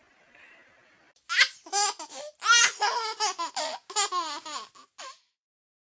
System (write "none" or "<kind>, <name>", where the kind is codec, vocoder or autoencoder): none